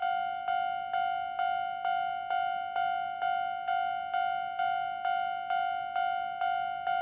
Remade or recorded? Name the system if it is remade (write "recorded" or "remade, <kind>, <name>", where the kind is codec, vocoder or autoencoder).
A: recorded